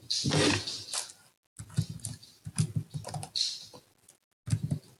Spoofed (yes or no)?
no